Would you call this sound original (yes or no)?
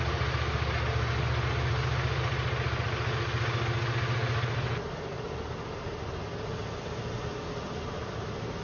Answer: yes